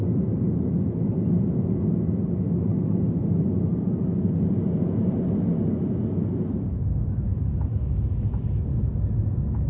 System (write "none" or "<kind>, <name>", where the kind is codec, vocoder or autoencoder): none